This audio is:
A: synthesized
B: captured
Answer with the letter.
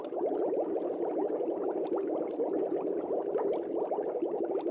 B